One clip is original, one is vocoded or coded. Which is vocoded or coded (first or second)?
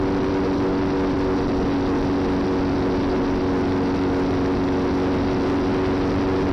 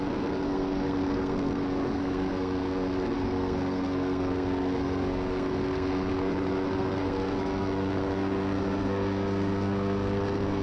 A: second